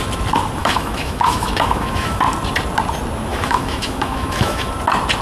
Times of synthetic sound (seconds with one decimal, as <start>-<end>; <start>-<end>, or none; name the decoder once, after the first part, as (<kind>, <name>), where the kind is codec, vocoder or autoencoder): 0.6-2.2 (autoencoder, DAC-VAE); 3.3-4.7